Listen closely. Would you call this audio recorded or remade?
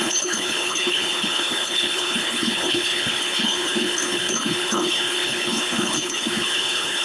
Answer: remade